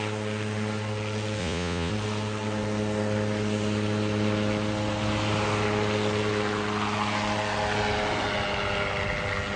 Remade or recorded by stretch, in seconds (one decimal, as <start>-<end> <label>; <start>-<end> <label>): 0.0-1.4 recorded; 1.4-1.9 remade; 1.9-9.6 recorded